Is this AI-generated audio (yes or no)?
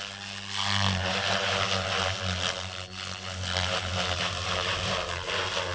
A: no